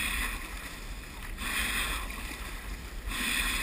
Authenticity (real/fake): real